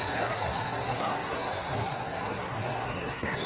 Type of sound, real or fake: fake